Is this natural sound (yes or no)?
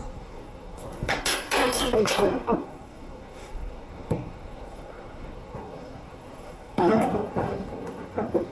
no